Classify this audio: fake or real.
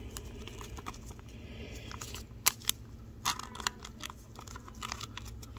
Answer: real